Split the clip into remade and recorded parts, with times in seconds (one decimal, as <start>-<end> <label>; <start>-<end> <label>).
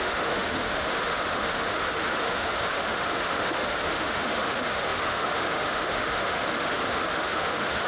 0.0-7.9 remade